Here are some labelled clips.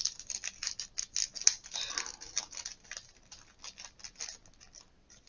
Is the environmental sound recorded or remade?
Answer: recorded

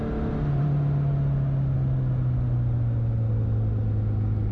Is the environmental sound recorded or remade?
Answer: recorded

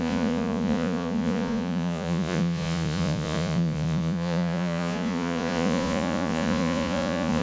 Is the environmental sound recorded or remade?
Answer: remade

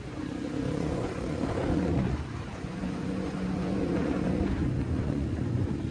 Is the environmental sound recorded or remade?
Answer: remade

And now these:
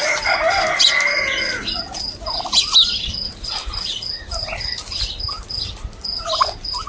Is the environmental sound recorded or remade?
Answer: recorded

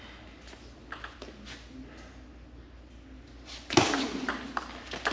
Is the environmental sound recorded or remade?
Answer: recorded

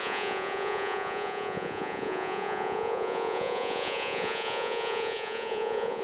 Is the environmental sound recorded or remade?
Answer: remade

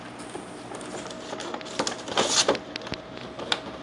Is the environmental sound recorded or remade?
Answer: recorded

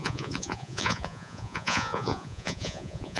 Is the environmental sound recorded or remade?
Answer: remade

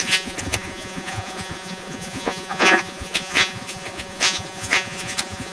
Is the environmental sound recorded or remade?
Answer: remade